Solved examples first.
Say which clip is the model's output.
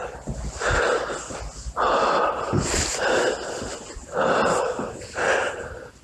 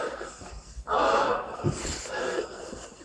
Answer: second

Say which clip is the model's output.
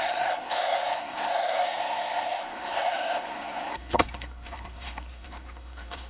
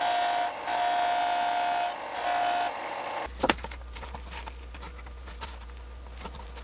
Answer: first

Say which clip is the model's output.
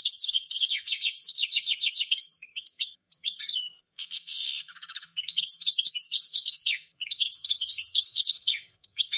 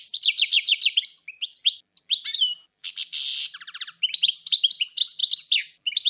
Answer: first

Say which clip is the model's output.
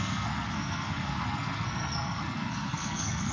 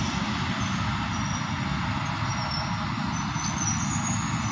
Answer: first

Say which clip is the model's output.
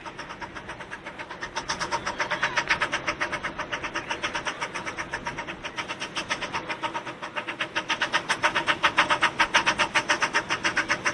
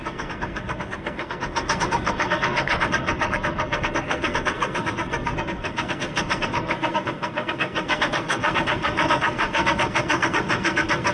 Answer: second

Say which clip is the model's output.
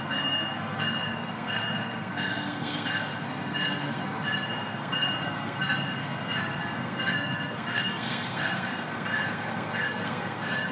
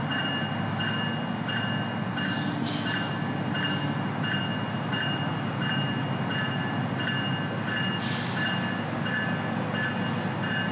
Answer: first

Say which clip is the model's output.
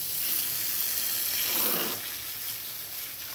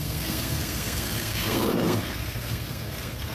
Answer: second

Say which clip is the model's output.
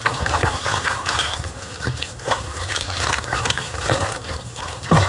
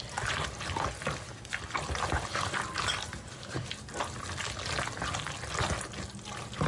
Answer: first